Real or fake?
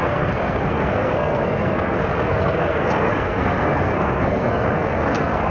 fake